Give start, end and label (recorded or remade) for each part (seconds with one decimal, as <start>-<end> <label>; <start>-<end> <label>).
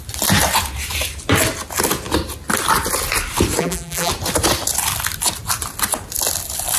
0.0-3.6 recorded; 3.6-4.1 remade; 4.1-6.8 recorded